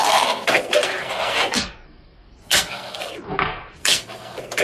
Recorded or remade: remade